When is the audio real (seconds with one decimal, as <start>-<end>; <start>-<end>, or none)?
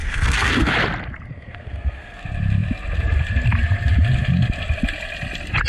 0.7-1.3; 2.2-5.7